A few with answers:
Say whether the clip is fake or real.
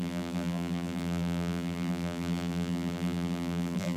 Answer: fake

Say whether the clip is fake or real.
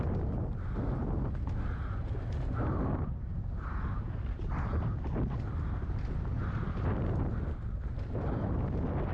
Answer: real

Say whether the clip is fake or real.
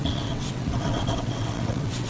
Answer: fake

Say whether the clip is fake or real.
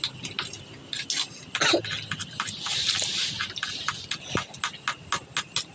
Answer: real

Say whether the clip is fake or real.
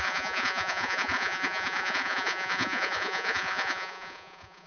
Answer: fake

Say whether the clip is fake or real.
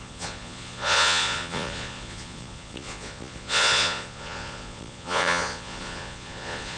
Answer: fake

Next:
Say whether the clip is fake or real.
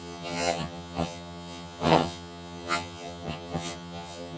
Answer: fake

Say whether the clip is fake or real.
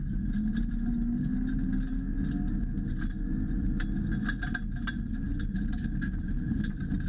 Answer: real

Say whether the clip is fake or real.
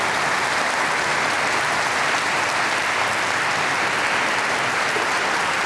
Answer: real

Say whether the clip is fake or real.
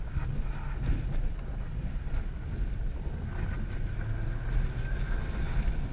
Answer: real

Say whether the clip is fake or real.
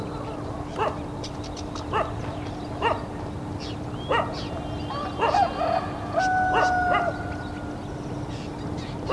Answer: real